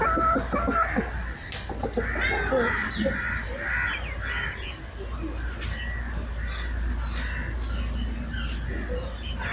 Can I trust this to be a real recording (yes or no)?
yes